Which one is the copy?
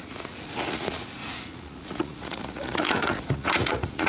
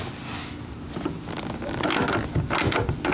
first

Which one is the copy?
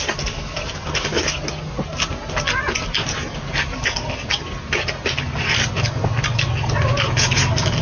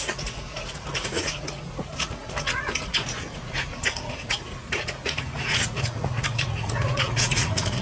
second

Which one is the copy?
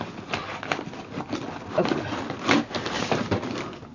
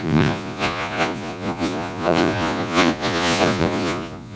second